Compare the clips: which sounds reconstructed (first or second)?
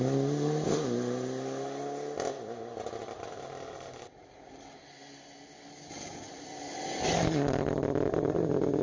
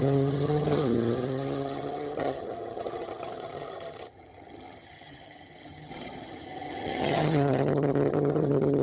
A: second